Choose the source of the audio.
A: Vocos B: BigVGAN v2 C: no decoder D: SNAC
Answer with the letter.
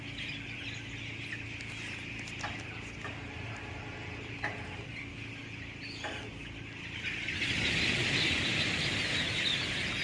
C